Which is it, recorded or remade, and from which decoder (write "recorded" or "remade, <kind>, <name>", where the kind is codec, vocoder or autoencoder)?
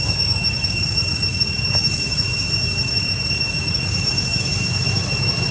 remade, autoencoder, DAC-VAE